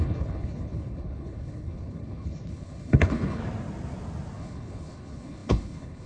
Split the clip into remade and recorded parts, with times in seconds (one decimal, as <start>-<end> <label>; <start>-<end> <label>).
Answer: 0.0-3.4 remade; 3.4-4.4 recorded; 4.4-6.1 remade